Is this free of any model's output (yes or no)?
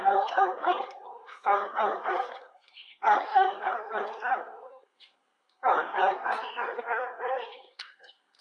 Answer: no